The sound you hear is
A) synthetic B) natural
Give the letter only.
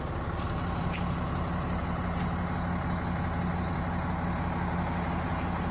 B